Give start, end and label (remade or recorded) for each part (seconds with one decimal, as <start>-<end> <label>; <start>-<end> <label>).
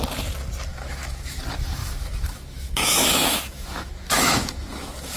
0.0-0.7 recorded; 0.7-1.4 remade; 1.4-1.8 recorded; 1.8-5.2 remade